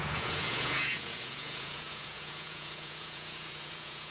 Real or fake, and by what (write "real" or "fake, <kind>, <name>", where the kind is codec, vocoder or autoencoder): fake, vocoder, Vocos